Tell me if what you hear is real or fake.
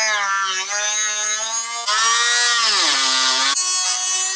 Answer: real